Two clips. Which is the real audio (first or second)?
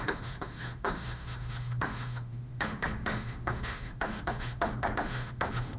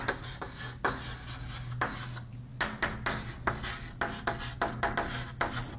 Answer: second